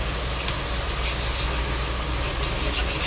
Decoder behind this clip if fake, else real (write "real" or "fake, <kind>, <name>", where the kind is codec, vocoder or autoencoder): real